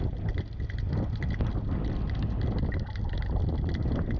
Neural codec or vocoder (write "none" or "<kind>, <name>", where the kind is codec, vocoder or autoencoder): none